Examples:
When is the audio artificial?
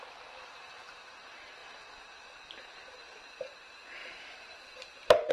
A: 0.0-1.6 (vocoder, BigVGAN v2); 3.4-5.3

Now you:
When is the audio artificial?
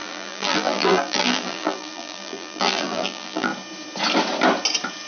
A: 0.0-3.5 (vocoder, BigVGAN v2)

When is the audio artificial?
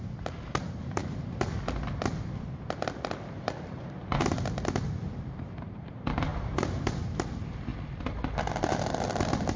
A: 0.0-1.0 (vocoder, BigVGAN v2); 4.8-7.7; 9.2-9.6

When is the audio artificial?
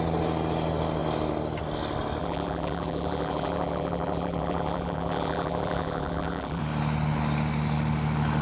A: 2.2-6.6 (vocoder, BigVGAN v2)